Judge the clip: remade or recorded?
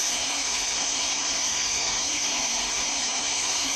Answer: remade